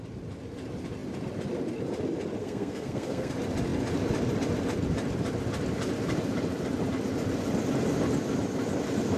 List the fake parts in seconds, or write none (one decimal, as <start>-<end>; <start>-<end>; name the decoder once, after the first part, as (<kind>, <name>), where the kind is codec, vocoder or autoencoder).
2.4-3.3 (codec, SNAC)